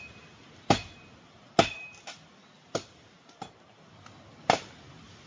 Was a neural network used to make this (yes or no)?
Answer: no